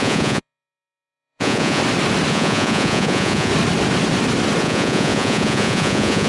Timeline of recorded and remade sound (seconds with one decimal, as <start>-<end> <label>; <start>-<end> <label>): 0.0-1.8 remade; 1.8-2.3 recorded; 2.3-3.5 remade; 3.5-4.6 recorded; 4.6-6.3 remade